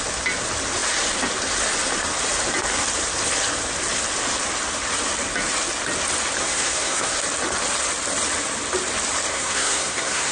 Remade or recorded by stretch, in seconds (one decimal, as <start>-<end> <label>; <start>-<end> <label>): 0.0-6.4 recorded; 6.4-7.1 remade; 7.1-9.3 recorded; 9.3-10.3 remade